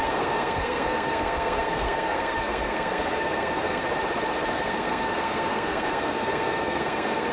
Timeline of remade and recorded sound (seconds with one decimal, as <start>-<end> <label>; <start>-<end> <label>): 0.0-3.8 remade; 3.8-4.5 recorded; 4.5-7.3 remade